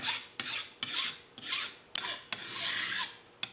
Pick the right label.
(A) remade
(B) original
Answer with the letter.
B